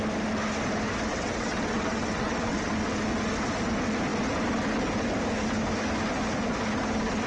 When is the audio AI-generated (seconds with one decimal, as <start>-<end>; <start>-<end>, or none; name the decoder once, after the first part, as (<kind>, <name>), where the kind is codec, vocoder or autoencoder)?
1.1-2.7 (vocoder, WaveNeXt)